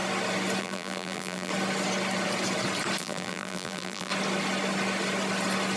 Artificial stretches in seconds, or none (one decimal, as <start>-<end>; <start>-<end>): 0.6-1.5; 3.0-4.1